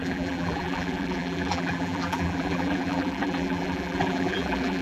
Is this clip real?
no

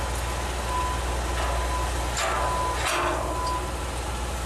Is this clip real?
yes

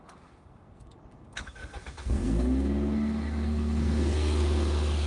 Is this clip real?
no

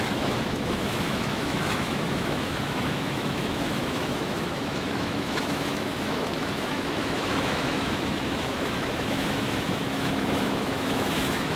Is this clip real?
no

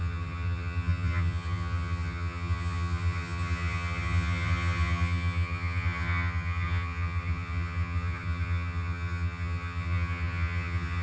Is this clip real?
no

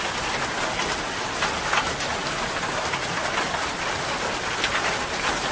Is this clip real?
yes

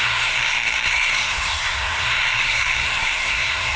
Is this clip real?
no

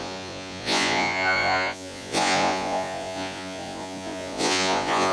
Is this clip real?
no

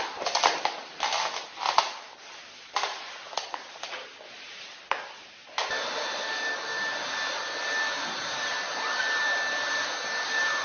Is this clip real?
yes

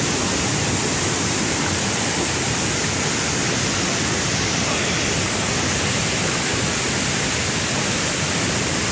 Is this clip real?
yes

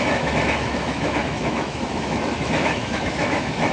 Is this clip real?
no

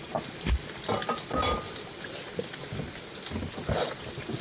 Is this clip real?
no